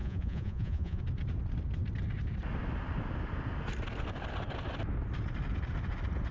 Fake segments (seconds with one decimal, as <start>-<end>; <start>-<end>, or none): 0.0-1.0